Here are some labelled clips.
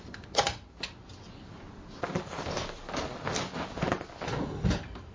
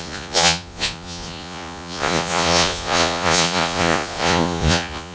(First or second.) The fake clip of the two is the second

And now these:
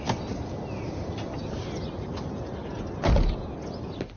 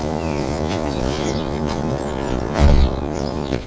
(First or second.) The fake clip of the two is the second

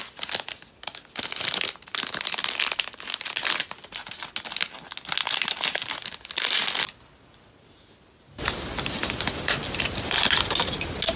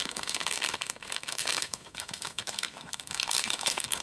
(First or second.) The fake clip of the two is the second